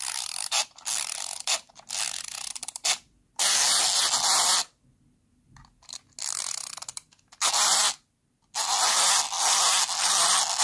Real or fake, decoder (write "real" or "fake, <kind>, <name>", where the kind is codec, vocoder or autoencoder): real